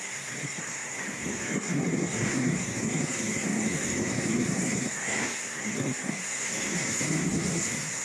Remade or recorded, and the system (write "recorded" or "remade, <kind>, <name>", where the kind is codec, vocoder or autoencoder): remade, codec, SNAC